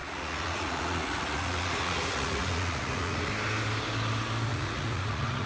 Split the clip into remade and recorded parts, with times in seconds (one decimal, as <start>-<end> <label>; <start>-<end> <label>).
0.0-3.3 remade; 3.3-4.5 recorded; 4.5-5.5 remade